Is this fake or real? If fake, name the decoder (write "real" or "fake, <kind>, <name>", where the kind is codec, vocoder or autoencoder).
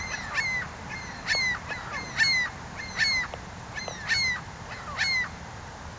real